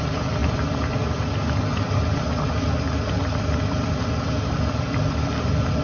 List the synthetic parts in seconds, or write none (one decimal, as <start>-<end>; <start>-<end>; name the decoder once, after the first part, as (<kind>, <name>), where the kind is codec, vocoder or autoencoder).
none